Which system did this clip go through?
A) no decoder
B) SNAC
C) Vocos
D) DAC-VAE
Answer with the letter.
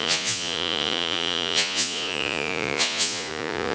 C